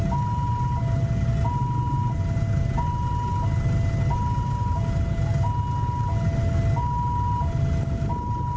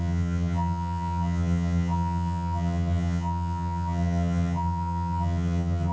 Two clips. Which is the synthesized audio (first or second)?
second